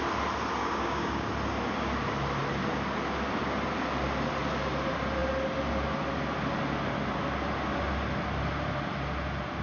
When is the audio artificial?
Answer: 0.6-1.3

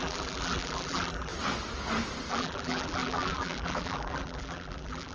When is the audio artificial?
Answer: 0.0-1.3; 2.3-5.1

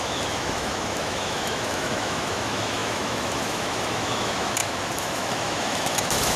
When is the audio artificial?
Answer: 0.0-6.4

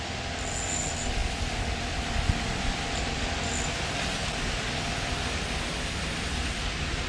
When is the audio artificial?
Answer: none

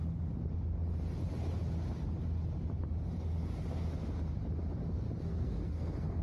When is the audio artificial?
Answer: 5.3-6.2

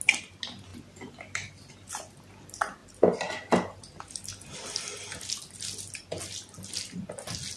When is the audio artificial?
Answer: none

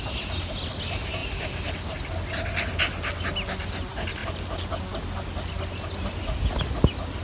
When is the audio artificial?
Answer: none